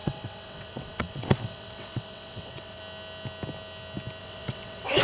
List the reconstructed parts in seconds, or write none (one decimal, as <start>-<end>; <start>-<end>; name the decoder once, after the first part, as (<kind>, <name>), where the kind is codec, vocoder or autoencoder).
0.0-2.8 (vocoder, WaveNeXt); 4.2-5.0